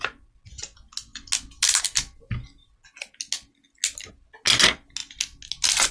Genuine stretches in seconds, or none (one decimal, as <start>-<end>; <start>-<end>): 0.0-5.9